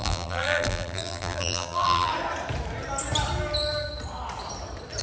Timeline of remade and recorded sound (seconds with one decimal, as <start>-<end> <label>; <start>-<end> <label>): 0.0-2.1 remade; 2.1-5.0 recorded